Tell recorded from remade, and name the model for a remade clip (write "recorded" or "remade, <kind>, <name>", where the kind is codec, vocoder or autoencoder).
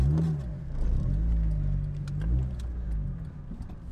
recorded